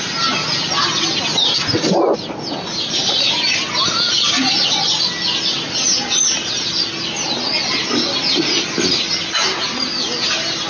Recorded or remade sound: recorded